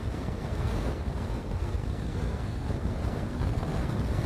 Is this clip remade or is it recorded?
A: remade